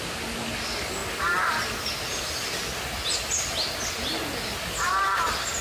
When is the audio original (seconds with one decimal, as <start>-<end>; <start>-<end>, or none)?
0.0-5.6